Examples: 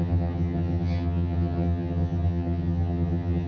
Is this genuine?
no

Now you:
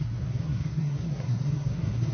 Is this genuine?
no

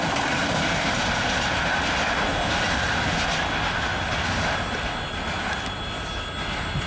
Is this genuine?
yes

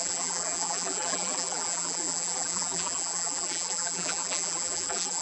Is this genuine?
no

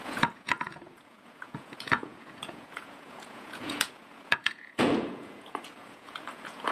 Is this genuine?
no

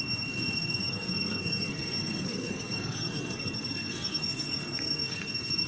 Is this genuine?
no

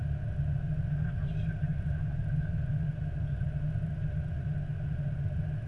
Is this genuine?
yes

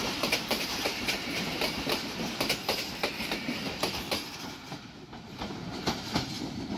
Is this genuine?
no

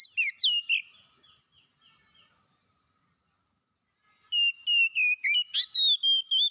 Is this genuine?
yes